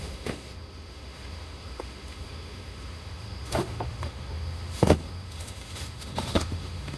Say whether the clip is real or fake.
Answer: fake